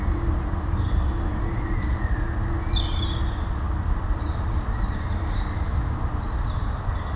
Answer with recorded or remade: recorded